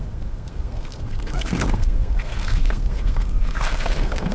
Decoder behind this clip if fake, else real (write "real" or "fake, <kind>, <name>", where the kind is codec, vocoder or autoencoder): fake, codec, SNAC